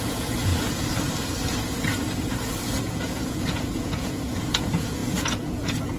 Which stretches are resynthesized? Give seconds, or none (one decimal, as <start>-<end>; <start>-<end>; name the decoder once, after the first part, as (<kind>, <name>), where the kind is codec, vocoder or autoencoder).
0.0-0.5 (vocoder, Vocos); 2.8-6.0